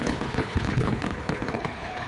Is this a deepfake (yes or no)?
yes